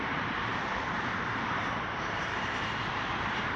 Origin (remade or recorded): remade